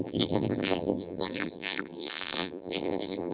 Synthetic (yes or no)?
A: yes